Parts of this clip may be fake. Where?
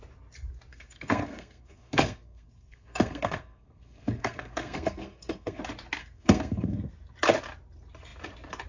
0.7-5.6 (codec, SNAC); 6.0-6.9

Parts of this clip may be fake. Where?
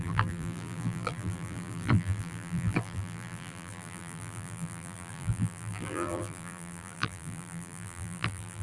0.0-8.6 (vocoder, BigVGAN v2)